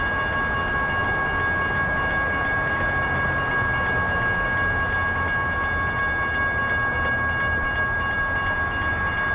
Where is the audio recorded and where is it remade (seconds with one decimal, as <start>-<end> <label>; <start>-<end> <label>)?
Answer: 0.0-9.3 recorded